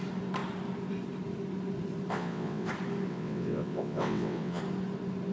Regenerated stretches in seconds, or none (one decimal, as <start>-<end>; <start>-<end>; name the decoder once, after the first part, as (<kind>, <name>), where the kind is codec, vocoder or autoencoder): 2.1-2.7 (vocoder, WaveNeXt); 3.1-4.6